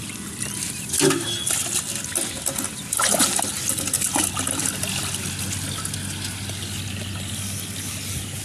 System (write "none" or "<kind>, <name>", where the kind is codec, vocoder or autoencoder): none